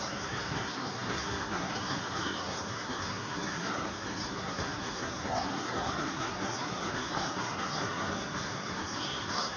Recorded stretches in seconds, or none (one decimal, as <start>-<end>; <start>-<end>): none